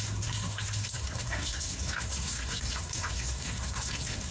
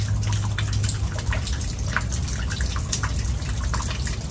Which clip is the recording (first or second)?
second